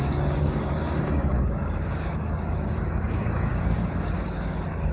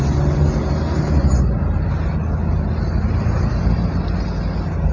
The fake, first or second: first